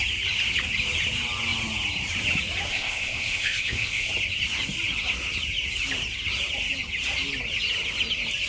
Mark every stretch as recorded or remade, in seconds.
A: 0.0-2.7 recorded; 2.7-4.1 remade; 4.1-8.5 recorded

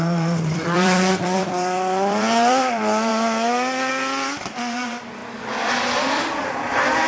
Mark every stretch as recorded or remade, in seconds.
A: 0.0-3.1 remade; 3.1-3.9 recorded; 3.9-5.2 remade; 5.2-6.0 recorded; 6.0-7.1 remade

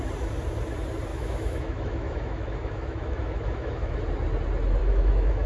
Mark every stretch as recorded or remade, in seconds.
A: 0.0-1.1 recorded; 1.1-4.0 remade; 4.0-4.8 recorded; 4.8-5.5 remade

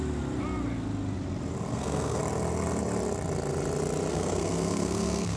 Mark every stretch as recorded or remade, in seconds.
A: 0.0-1.7 recorded; 1.7-2.2 remade; 2.2-4.1 recorded; 4.1-5.4 remade

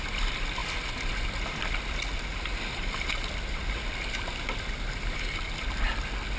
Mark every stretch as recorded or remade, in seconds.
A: 0.0-6.4 recorded